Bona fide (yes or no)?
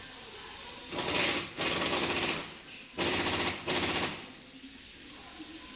yes